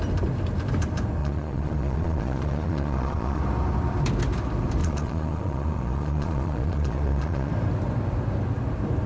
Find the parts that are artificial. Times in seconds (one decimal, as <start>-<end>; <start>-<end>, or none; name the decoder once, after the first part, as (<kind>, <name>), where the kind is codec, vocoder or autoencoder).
1.2-3.4 (vocoder, Vocos); 4.8-7.5